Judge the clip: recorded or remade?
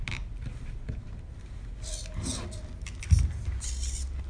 recorded